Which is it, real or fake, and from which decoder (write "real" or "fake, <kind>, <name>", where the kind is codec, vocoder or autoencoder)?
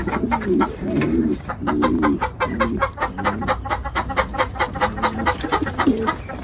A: fake, vocoder, BigVGAN v2